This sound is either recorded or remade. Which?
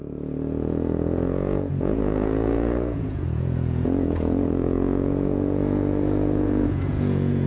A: remade